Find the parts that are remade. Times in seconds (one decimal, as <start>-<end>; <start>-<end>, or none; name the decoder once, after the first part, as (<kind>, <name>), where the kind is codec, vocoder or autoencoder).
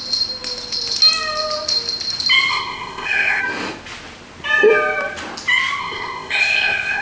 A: 2.5-3.4 (codec, ZipCodec); 5.8-7.0